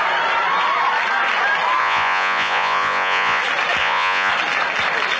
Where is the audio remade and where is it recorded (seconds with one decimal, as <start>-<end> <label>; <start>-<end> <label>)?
0.0-1.8 recorded; 1.8-3.4 remade; 3.4-3.8 recorded; 3.8-4.3 remade; 4.3-5.2 recorded